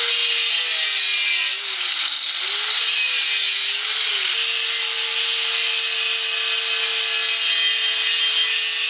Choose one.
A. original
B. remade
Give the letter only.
A